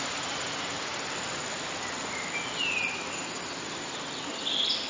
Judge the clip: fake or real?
real